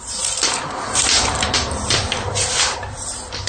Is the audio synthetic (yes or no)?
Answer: yes